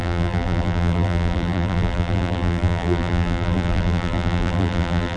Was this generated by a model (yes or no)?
yes